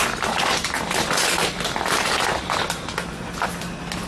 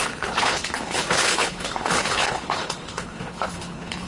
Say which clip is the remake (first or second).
second